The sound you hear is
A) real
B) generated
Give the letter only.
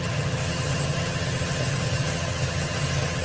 B